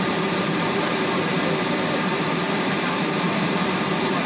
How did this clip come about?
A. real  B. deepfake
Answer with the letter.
B